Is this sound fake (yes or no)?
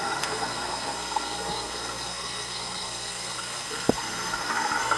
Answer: yes